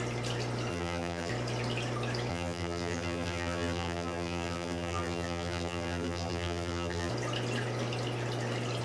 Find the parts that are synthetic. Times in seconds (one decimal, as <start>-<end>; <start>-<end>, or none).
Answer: 0.7-1.3; 2.3-7.1